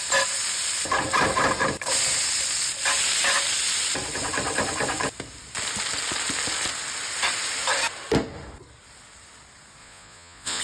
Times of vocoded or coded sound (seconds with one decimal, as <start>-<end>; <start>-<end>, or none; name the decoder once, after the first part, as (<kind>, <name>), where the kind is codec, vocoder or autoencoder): 9.8-10.6 (vocoder, Vocos)

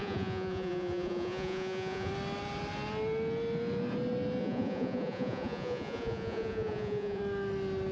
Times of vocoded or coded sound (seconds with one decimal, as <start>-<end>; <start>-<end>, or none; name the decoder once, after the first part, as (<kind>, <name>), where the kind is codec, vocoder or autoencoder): 0.0-2.1 (vocoder, Vocos); 4.4-7.2

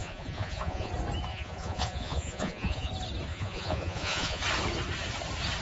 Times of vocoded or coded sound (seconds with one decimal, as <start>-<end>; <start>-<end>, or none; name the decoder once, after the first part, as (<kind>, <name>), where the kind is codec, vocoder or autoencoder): 0.0-0.9 (vocoder, Vocos); 1.3-2.9; 3.3-4.4

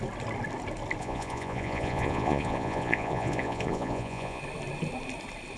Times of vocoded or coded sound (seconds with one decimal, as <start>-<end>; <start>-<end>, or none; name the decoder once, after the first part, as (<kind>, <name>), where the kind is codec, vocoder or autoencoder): 1.0-4.4 (vocoder, Vocos)

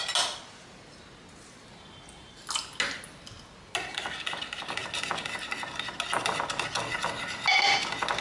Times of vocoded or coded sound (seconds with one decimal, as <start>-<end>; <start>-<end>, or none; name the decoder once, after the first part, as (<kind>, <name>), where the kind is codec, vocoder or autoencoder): none

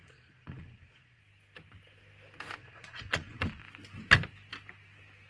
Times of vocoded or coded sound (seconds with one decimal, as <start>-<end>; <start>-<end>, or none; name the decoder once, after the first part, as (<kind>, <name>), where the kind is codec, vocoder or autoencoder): 0.0-1.2 (vocoder, Vocos); 2.6-3.6

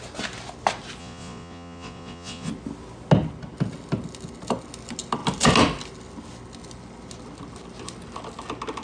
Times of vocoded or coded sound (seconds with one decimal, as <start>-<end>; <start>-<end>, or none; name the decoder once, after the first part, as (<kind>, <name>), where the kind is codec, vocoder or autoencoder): 1.0-2.5 (vocoder, Vocos)